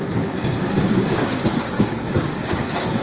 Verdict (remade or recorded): remade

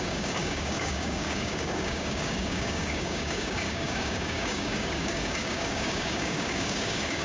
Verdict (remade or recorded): remade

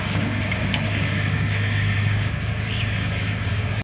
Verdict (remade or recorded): remade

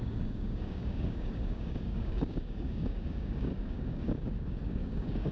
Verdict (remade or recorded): remade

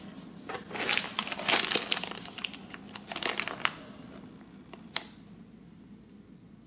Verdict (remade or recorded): recorded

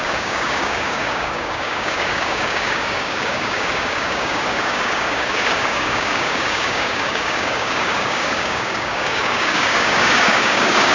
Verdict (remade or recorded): remade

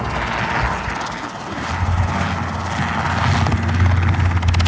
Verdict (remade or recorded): recorded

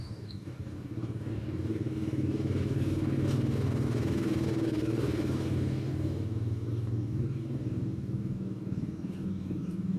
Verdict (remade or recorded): remade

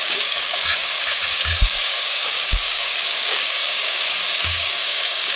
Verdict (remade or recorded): remade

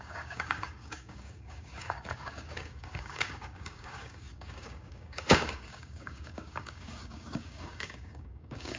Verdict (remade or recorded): remade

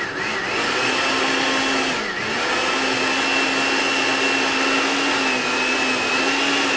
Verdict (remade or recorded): recorded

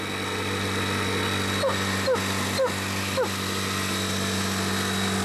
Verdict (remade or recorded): recorded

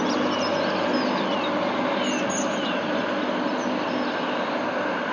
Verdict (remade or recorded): recorded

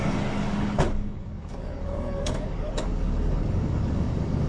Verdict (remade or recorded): remade